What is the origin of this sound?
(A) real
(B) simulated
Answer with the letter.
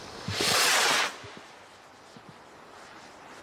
A